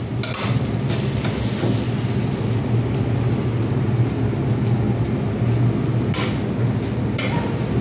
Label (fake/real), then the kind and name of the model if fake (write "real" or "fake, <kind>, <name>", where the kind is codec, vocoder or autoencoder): real